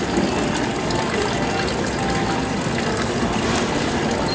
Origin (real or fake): real